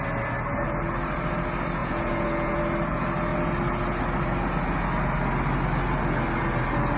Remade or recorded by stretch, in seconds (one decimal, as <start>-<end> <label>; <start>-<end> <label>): 0.0-1.8 recorded; 1.8-2.6 remade; 2.6-7.0 recorded